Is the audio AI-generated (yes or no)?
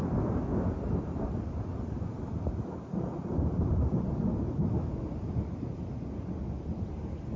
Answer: no